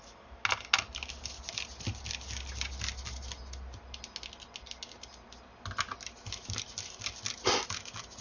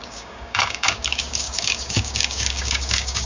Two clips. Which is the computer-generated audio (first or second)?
second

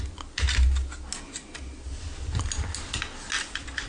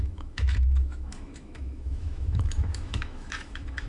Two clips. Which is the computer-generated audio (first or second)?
second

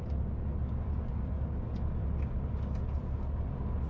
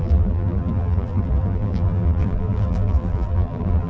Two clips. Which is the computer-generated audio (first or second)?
second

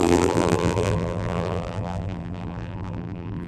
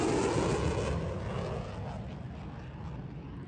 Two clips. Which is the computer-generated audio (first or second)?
first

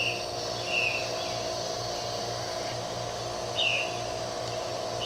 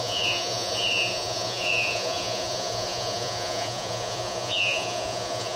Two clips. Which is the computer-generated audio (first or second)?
second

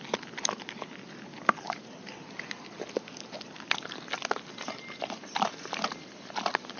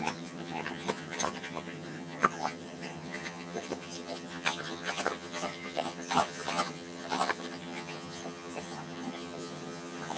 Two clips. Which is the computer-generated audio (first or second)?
second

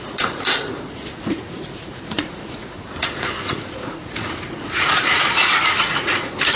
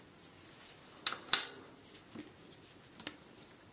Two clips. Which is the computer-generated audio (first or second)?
first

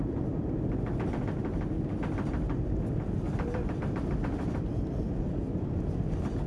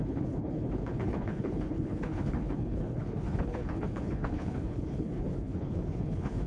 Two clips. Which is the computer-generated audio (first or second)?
second